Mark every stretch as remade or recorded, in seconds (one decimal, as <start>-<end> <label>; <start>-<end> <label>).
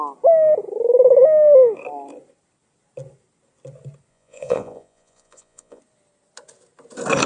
0.0-4.1 recorded; 4.1-5.8 remade; 5.8-7.3 recorded